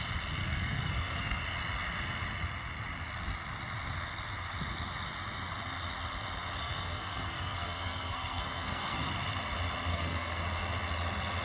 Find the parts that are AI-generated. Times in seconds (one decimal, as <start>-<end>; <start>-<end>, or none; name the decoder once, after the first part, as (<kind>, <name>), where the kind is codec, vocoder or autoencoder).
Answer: 0.4-1.4 (codec, SNAC); 6.6-9.1; 9.9-10.4

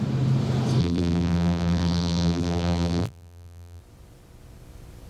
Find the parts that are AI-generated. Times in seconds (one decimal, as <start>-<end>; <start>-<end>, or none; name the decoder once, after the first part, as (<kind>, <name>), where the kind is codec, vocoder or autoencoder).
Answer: 0.8-3.8 (vocoder, BigVGAN v2)

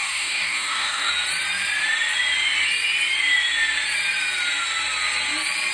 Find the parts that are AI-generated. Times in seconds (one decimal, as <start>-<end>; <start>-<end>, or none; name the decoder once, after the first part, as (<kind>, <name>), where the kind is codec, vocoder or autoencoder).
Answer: 0.0-1.1 (codec, DAC)

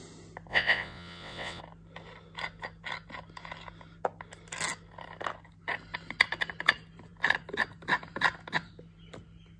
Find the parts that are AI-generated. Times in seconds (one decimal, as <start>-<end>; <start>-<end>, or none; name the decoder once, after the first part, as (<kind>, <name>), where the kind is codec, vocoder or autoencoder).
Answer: 0.5-1.6 (vocoder, WaveNeXt)

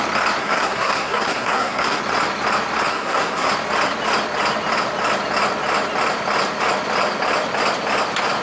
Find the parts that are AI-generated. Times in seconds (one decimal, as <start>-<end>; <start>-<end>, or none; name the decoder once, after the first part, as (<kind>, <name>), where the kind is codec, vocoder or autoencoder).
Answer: 0.4-2.0 (codec, SNAC); 2.9-3.5

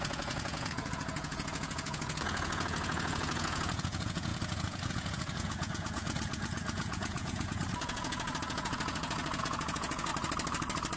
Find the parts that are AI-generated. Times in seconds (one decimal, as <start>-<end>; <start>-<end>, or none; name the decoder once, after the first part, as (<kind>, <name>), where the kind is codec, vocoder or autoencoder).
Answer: 0.0-10.1 (vocoder, Vocos)

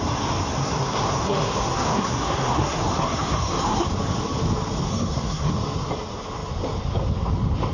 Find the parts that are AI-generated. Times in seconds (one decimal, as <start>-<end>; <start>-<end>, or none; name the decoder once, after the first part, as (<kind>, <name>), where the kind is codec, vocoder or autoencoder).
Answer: 0.6-3.9 (codec, SNAC); 4.9-5.5

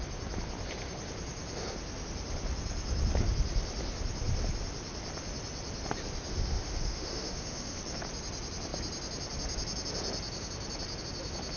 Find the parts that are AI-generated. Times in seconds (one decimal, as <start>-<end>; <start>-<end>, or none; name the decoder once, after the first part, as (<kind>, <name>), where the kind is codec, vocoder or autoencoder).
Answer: 6.3-7.8 (autoencoder, DAC-VAE)